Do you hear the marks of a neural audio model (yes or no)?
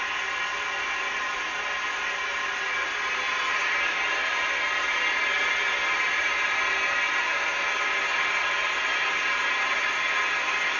no